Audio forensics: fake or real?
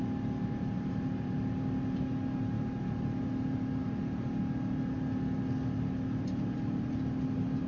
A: real